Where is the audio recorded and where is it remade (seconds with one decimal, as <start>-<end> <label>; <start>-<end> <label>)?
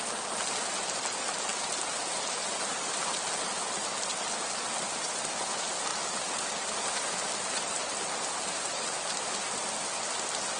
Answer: 0.0-1.5 recorded; 1.5-3.1 remade; 3.1-10.6 recorded